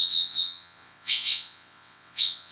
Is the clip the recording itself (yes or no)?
no